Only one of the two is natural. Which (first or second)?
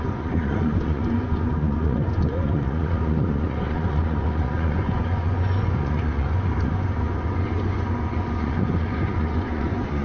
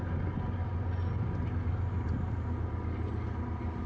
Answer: second